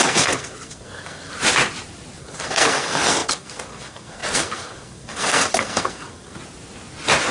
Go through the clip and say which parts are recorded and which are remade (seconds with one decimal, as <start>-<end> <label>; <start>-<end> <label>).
0.0-1.3 remade; 1.3-2.2 recorded; 2.2-6.4 remade; 6.4-7.3 recorded